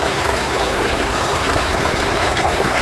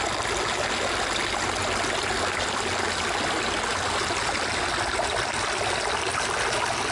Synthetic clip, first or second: first